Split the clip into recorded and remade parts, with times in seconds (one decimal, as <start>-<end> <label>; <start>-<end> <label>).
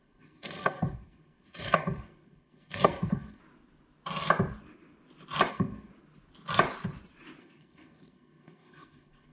0.0-3.4 remade; 3.4-5.5 recorded; 5.5-5.9 remade; 5.9-7.4 recorded; 7.4-9.3 remade